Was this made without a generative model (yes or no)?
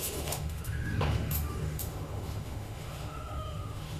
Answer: no